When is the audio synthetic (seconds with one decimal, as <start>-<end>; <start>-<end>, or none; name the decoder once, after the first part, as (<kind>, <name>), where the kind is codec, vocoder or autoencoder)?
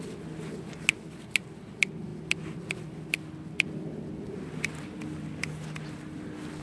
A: none